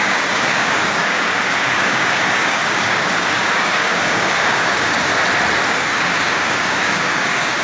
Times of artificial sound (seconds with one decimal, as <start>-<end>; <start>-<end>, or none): 0.0-5.1; 5.7-7.6